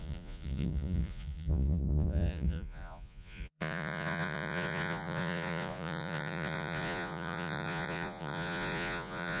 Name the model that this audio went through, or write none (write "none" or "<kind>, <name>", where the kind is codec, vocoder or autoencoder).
vocoder, Vocos